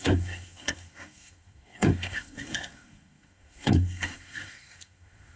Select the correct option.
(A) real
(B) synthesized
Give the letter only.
B